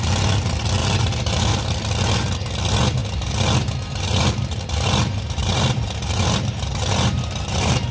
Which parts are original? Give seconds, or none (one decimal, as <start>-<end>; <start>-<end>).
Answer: 0.0-0.8; 1.5-3.0